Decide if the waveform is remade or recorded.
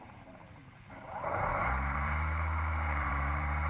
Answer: remade